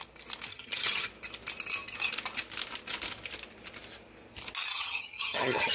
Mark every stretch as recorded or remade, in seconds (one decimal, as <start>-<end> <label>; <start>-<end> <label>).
0.0-0.5 recorded; 0.5-1.1 remade; 1.1-4.7 recorded; 4.7-5.7 remade